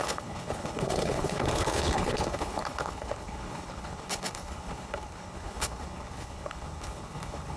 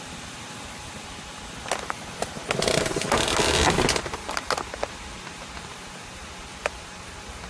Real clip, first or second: second